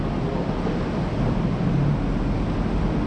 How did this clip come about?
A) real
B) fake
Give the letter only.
A